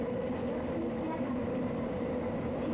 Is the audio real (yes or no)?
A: yes